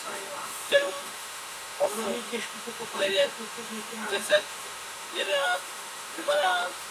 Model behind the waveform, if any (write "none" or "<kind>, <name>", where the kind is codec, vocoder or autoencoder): autoencoder, DAC-VAE